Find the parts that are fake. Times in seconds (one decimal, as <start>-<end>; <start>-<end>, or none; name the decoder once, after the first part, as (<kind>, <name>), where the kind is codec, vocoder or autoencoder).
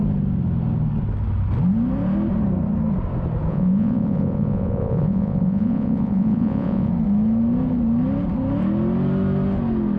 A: 3.5-6.9 (vocoder, Vocos)